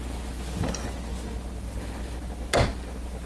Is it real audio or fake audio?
real